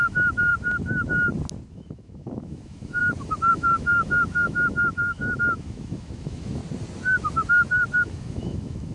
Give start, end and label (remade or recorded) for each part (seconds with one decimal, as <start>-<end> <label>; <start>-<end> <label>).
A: 0.0-0.5 remade; 0.5-1.7 recorded; 1.7-3.0 remade; 3.0-3.5 recorded; 3.5-6.6 remade; 6.6-8.0 recorded; 8.0-8.9 remade